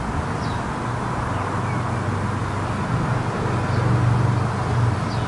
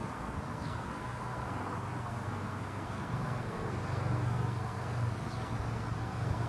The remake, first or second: second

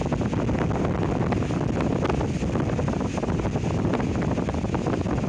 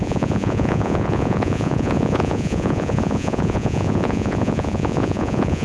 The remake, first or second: second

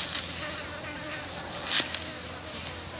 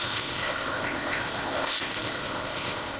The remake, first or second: second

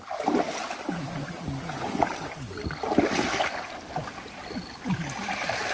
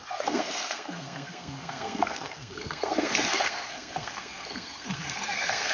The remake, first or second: second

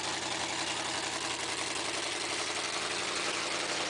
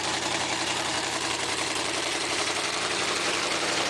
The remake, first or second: second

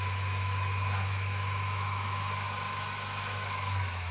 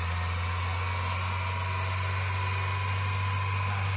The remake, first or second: first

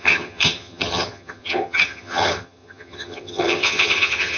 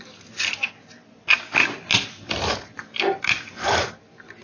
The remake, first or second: first